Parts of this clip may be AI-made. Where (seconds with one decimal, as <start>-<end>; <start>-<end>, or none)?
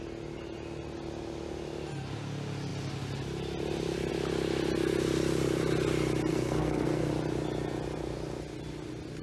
6.3-7.1